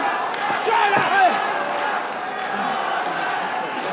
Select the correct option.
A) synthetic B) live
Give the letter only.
B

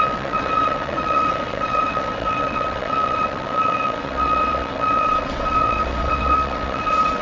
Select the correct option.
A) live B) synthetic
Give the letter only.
B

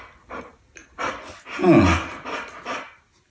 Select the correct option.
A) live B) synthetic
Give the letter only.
A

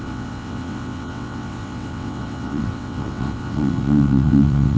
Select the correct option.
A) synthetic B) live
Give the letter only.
A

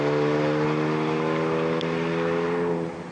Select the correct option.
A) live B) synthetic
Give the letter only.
A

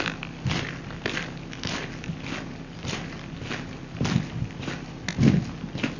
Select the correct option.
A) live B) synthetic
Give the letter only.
A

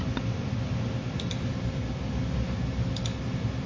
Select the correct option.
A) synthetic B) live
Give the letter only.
B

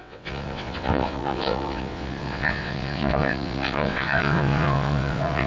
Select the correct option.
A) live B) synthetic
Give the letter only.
B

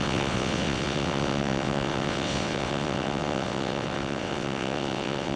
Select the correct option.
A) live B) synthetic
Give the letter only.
B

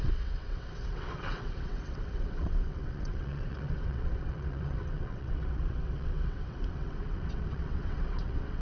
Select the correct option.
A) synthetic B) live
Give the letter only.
A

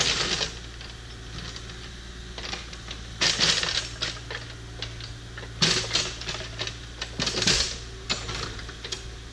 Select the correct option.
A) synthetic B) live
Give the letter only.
B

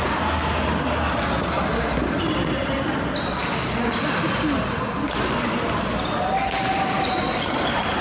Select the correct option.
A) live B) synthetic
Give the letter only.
A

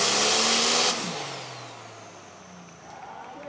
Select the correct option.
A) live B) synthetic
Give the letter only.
A